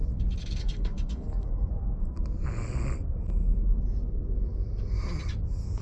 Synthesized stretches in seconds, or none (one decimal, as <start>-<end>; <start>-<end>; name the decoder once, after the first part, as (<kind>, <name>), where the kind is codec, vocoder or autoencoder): 0.4-1.7 (codec, SNAC)